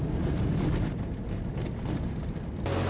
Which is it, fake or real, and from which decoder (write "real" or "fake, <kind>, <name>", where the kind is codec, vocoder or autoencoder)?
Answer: real